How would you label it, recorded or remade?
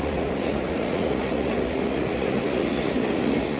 remade